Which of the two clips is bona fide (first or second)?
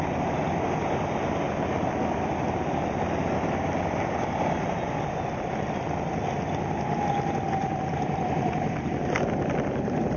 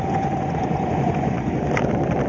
first